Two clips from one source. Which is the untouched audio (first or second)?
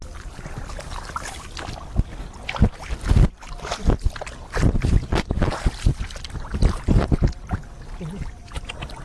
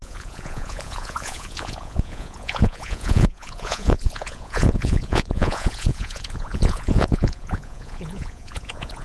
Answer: first